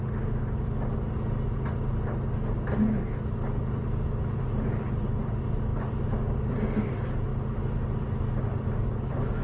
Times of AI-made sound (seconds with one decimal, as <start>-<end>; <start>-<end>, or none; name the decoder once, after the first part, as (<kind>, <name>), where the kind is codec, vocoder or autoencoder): none